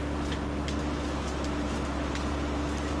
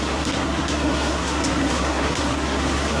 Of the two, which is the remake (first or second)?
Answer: second